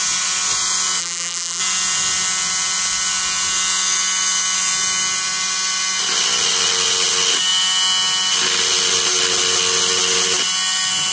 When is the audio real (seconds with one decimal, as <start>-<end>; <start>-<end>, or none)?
0.0-1.0; 1.6-11.1